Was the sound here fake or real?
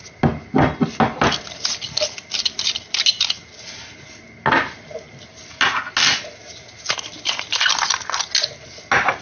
real